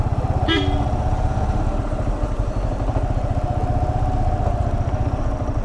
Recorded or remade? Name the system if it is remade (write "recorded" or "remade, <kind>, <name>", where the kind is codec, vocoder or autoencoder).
recorded